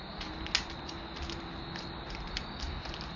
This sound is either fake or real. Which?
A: real